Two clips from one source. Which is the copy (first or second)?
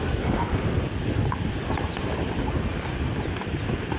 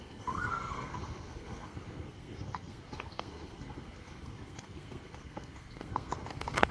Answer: second